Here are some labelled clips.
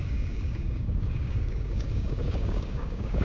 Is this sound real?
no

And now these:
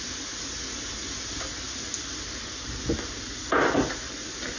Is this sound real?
yes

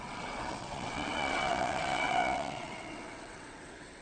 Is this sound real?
no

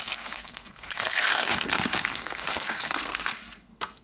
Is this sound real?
no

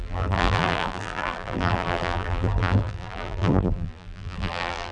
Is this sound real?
no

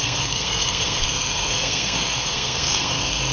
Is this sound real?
no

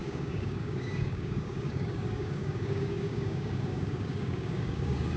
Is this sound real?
no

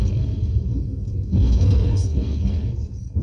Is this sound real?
no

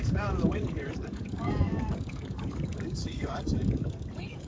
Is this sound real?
no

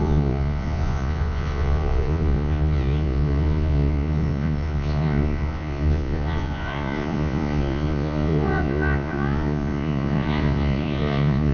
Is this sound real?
no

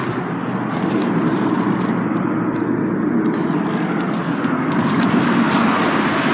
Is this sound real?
yes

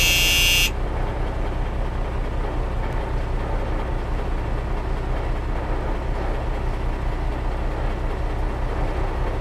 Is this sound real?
yes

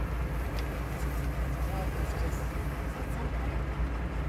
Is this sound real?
yes